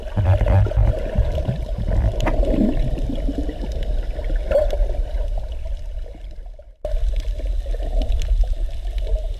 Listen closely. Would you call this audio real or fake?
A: real